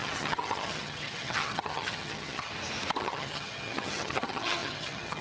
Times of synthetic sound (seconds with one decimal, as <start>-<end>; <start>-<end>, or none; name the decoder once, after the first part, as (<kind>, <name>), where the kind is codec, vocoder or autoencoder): 0.0-2.5 (vocoder, HiFi-GAN); 3.0-5.2